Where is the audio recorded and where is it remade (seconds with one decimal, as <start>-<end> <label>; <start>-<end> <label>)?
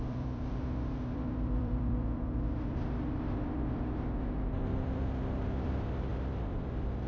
0.0-7.1 remade